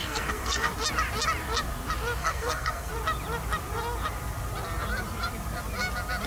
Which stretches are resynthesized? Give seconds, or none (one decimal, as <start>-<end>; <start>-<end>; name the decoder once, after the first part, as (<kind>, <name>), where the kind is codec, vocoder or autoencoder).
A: 0.0-0.7 (codec, SNAC); 2.2-2.9